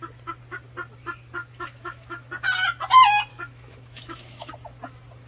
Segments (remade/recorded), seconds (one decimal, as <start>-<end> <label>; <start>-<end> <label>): 0.0-1.4 recorded; 1.4-2.3 remade; 2.3-3.3 recorded; 3.3-4.5 remade; 4.5-5.3 recorded